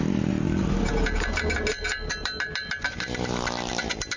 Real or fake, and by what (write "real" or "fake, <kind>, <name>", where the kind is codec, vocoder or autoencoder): real